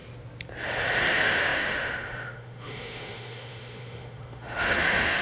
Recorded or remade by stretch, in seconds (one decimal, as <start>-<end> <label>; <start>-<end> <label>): 0.0-1.1 recorded; 1.1-5.2 remade

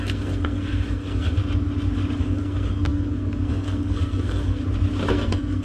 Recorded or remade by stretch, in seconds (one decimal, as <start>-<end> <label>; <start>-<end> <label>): 0.0-1.4 remade; 1.4-2.2 recorded; 2.2-4.6 remade; 4.6-5.1 recorded; 5.1-5.6 remade

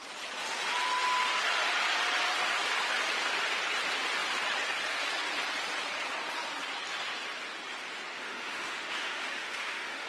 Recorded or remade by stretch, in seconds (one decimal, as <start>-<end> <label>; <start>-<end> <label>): 0.0-8.1 recorded; 8.1-10.1 remade

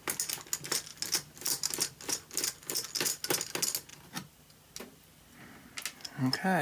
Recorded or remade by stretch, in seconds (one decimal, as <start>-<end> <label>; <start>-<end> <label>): 0.0-6.6 recorded

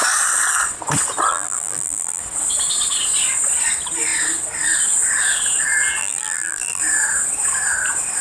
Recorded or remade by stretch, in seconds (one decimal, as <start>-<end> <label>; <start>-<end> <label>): 0.0-1.3 recorded; 1.3-2.2 remade; 2.2-6.0 recorded; 6.0-6.8 remade; 6.8-8.2 recorded

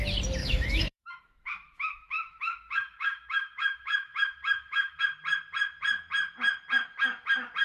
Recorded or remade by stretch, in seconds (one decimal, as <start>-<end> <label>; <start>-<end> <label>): 0.0-0.4 recorded; 0.4-5.0 remade; 5.0-7.6 recorded

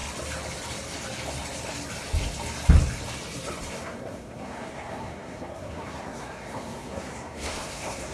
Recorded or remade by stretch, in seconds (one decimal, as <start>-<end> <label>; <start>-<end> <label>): 0.0-3.7 recorded; 3.7-8.1 remade

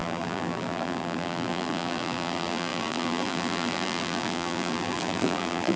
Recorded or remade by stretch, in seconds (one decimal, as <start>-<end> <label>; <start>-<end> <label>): 0.0-5.8 remade